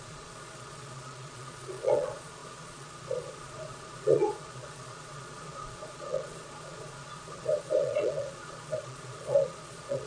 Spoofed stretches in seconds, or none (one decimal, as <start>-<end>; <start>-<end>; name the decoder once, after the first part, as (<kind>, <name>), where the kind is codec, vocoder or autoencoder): 0.0-10.1 (vocoder, Vocos)